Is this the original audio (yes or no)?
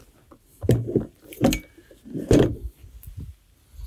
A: yes